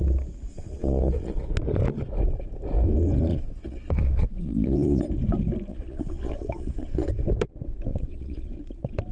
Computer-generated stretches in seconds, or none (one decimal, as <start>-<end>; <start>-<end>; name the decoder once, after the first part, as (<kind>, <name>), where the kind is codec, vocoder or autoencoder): 0.5-1.5 (vocoder, Vocos); 3.3-5.0; 5.7-7.1; 7.9-8.5